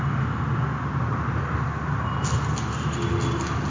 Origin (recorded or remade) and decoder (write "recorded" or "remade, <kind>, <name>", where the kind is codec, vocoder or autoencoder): recorded